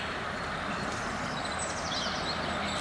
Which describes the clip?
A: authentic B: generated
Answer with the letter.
A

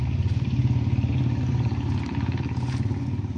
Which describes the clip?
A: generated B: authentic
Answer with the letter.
A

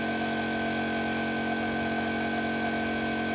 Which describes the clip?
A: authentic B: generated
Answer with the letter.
A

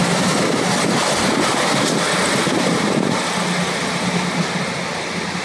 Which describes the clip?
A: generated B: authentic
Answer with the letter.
B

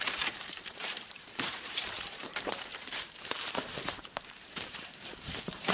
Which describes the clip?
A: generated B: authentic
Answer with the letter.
A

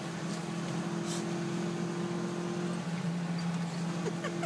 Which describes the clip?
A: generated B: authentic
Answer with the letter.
B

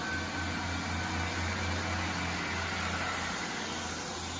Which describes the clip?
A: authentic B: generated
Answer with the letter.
A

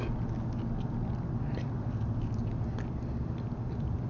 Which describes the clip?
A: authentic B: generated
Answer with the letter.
A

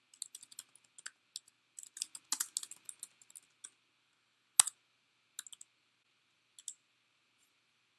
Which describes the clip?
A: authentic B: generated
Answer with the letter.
A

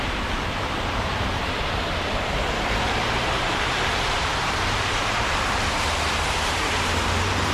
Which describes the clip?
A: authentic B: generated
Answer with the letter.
B